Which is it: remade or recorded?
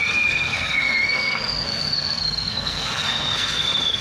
remade